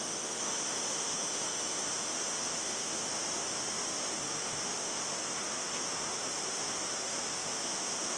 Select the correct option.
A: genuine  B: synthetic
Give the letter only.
B